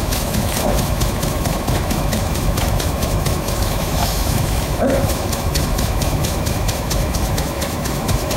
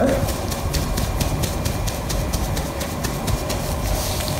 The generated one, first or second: first